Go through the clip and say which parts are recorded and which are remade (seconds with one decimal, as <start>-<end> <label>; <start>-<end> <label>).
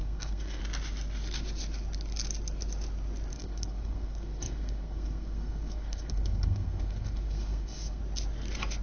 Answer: 0.0-0.6 remade; 0.6-3.3 recorded; 3.3-8.0 remade; 8.0-8.8 recorded